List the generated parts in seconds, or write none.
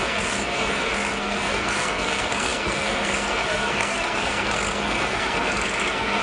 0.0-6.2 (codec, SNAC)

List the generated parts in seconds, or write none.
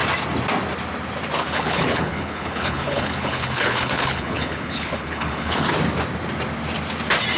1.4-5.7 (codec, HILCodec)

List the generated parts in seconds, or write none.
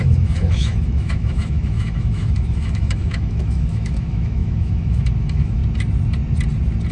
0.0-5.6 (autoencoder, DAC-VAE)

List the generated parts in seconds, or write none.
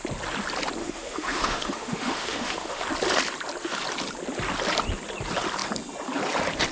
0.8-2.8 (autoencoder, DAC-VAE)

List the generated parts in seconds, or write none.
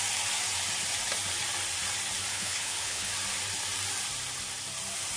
2.3-3.1 (codec, HILCodec)